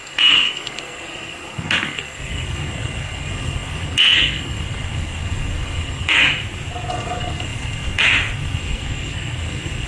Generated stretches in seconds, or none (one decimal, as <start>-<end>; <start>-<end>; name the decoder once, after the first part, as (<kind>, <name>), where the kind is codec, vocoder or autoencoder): 0.0-6.2 (codec, SNAC); 6.9-9.9